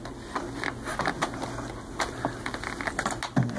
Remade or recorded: recorded